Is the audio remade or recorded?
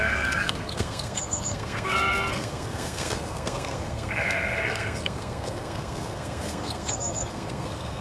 remade